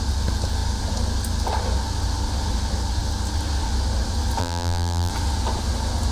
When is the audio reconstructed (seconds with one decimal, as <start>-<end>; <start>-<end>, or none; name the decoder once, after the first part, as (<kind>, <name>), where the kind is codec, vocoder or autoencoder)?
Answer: 4.4-5.1 (vocoder, BigVGAN v2)